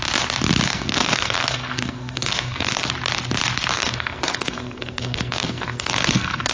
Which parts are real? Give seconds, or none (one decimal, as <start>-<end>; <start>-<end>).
0.0-0.7; 2.9-3.7